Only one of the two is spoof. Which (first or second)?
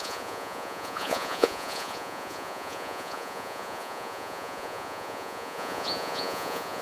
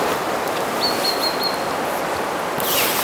first